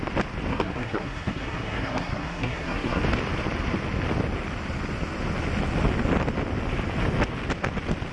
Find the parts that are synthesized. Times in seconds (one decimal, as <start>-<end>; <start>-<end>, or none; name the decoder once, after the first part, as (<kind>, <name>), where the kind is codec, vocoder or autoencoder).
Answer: 0.5-3.0 (codec, SNAC)

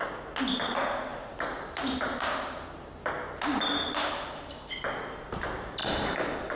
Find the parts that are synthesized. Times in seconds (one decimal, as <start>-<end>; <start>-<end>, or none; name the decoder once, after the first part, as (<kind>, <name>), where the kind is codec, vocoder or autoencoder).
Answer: none

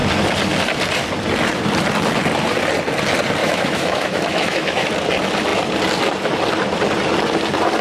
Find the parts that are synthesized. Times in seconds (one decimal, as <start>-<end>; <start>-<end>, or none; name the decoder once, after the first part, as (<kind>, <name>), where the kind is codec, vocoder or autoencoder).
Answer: 3.4-4.9 (autoencoder, DAC-VAE)

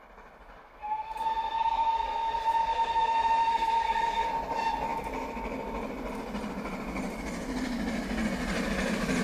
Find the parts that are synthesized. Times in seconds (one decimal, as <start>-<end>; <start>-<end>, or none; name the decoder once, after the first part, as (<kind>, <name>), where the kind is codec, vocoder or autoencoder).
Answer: 0.6-4.3 (codec, SNAC)

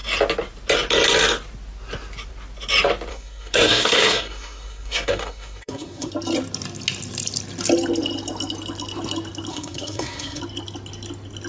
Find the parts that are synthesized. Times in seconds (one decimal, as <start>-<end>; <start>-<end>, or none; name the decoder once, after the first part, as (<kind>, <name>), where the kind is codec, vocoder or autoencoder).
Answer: 3.1-6.1 (codec, SNAC); 9.5-10.4

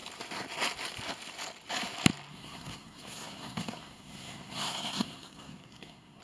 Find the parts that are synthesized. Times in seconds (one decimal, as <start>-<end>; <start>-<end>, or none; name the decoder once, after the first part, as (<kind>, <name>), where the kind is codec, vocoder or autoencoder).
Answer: 2.3-6.2 (codec, SNAC)

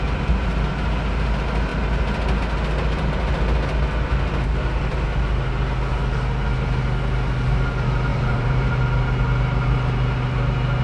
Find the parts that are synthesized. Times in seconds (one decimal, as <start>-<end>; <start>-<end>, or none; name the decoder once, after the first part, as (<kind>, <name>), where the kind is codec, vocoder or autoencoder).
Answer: 8.1-8.8 (vocoder, BigVGAN v2)